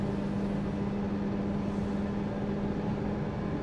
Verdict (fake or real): real